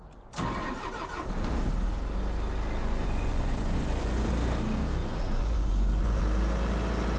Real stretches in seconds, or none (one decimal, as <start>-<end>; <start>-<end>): 0.0-2.8; 4.3-5.0; 6.2-7.2